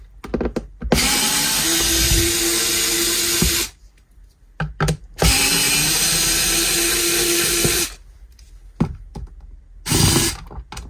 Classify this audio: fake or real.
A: real